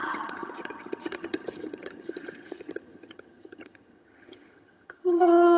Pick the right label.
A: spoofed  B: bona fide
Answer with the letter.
A